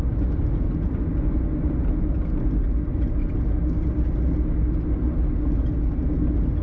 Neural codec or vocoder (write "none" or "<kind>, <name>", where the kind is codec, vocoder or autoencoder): none